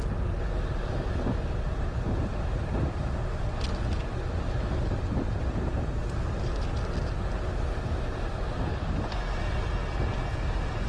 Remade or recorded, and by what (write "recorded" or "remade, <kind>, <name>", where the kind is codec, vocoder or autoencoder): recorded